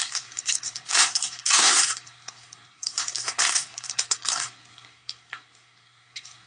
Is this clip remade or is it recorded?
remade